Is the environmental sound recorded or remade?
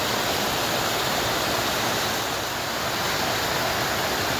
recorded